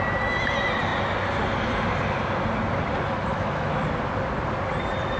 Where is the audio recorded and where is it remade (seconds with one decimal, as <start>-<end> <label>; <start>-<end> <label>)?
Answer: 0.0-3.3 recorded; 3.3-3.8 remade; 3.8-5.2 recorded